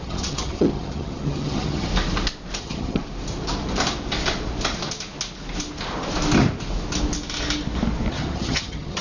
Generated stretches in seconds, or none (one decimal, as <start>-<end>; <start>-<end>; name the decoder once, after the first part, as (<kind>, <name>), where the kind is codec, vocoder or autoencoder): 0.0-1.9 (vocoder, HiFi-GAN); 2.6-3.0; 8.1-9.0